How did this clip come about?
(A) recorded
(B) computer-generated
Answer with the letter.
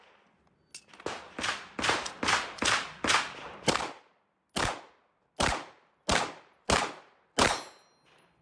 A